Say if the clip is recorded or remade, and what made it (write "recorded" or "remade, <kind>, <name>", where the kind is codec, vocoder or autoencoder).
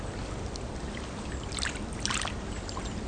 recorded